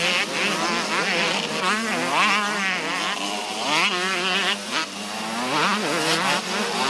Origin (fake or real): real